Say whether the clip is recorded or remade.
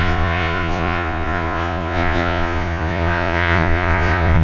remade